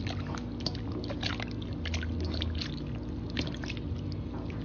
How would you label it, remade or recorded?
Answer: recorded